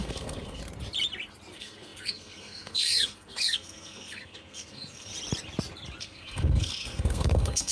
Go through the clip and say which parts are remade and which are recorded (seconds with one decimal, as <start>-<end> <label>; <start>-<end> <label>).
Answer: 0.0-0.6 remade; 0.6-1.5 recorded; 1.5-5.1 remade; 5.1-6.0 recorded; 6.0-7.7 remade